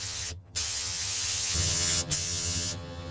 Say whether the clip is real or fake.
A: fake